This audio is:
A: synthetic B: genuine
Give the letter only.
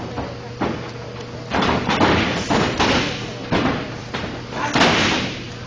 B